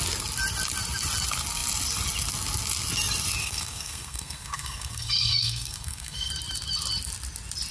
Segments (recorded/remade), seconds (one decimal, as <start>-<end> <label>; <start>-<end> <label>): 0.0-3.4 recorded; 3.4-6.3 remade; 6.3-7.7 recorded